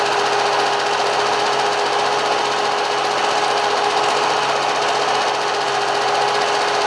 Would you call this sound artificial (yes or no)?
no